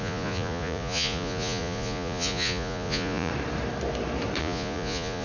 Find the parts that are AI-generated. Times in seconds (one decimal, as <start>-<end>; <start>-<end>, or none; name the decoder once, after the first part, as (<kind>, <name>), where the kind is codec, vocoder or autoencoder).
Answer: 0.0-3.3 (vocoder, Vocos); 4.4-5.2